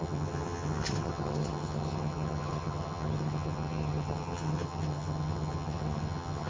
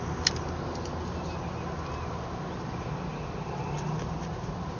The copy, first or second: first